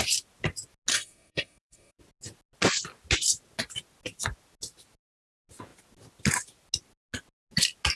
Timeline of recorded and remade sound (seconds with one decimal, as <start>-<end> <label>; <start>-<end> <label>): 0.0-0.9 recorded; 0.9-2.0 remade; 2.0-8.0 recorded